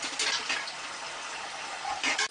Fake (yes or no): no